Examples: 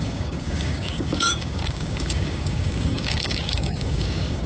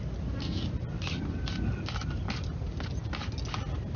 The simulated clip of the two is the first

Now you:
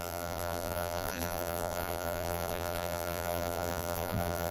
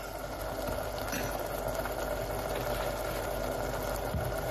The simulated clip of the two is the first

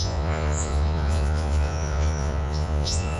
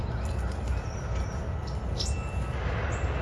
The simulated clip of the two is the first